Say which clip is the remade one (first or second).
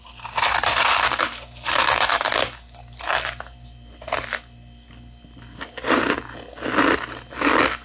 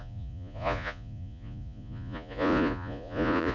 second